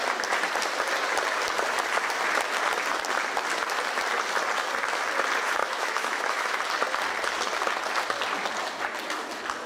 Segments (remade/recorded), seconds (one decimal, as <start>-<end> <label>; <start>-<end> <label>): 0.0-5.6 recorded; 5.6-6.6 remade; 6.6-9.7 recorded